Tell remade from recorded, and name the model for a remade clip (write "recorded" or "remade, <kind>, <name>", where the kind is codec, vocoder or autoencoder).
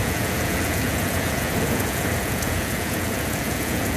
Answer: remade, vocoder, Vocos